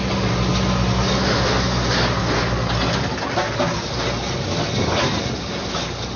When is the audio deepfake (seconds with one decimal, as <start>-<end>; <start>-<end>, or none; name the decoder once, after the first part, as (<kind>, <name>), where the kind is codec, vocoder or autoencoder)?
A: none

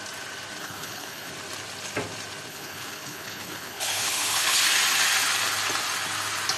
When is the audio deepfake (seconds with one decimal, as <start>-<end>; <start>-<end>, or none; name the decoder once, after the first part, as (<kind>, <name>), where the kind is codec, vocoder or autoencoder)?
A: 0.6-1.3 (codec, HILCodec); 2.5-4.6

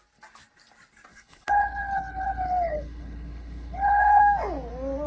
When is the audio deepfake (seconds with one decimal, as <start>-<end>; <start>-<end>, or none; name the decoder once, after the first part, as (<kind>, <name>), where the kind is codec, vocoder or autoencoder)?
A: 1.1-4.2 (codec, HILCodec)

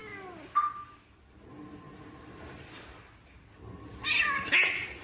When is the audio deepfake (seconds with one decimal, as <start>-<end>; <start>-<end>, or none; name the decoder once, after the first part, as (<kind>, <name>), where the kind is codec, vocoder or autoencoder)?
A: none

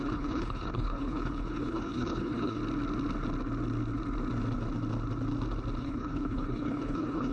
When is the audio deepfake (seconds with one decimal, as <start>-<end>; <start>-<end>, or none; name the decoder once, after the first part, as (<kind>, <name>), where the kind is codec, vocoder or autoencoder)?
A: 0.0-2.6 (codec, HILCodec); 5.8-7.3